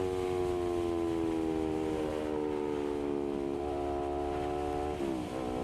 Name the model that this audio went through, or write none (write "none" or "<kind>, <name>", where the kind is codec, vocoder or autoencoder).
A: none